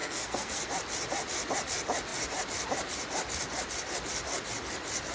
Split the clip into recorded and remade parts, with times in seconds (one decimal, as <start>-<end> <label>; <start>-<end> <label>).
0.0-0.7 remade; 0.7-5.1 recorded